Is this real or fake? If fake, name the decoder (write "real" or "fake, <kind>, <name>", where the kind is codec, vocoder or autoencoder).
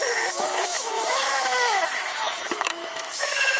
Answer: fake, autoencoder, DAC-VAE